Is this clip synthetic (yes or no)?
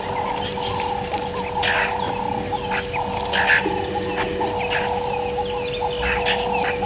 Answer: no